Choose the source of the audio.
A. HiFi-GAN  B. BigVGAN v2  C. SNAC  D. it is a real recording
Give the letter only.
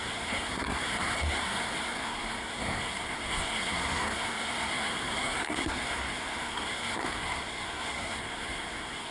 C